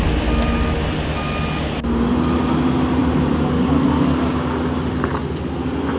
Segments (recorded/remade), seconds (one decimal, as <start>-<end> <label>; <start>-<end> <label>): 0.0-6.0 recorded